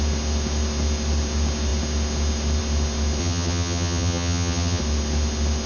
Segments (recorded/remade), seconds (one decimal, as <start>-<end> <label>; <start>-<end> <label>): 0.0-3.2 recorded; 3.2-4.8 remade; 4.8-5.7 recorded